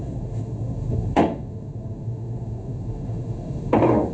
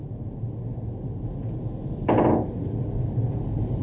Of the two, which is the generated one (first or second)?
first